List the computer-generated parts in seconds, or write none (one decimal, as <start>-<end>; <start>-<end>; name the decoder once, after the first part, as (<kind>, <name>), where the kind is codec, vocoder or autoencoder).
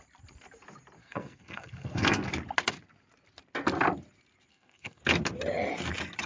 1.0-2.3 (codec, SNAC); 4.5-5.0